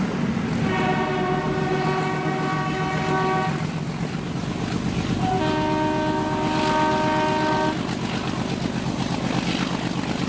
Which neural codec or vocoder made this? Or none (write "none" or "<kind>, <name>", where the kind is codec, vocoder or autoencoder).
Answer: none